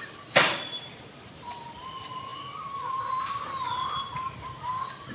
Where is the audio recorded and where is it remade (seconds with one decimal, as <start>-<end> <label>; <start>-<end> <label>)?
0.0-2.3 remade; 2.3-4.3 recorded; 4.3-5.1 remade